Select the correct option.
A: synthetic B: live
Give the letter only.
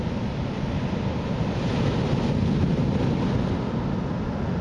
B